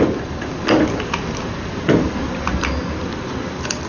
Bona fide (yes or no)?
yes